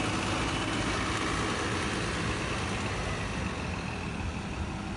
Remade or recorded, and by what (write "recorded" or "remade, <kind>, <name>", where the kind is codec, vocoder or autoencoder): recorded